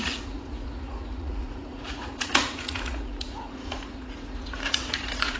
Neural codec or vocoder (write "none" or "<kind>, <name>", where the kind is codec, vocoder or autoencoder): vocoder, Vocos